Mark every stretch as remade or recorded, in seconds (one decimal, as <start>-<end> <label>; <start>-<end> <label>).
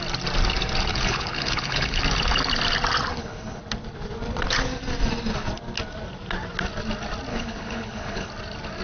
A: 0.0-0.9 recorded; 0.9-2.0 remade; 2.0-3.1 recorded; 3.1-3.6 remade; 3.6-7.3 recorded; 7.3-8.3 remade; 8.3-8.8 recorded